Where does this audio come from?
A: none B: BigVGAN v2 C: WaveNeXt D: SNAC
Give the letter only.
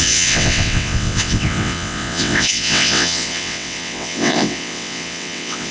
C